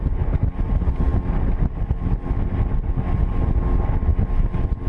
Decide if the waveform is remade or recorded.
recorded